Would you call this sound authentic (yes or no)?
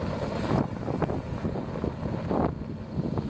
yes